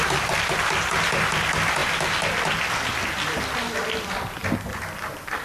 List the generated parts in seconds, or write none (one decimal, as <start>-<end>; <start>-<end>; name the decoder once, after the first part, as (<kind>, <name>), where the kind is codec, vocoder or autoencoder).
none